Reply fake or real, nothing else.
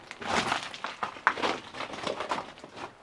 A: real